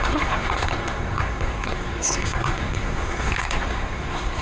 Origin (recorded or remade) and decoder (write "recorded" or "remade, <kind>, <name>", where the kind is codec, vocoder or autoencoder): remade, codec, SNAC